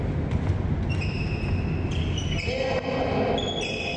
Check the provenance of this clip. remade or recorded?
recorded